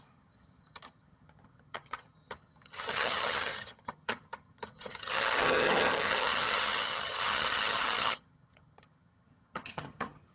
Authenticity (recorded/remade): remade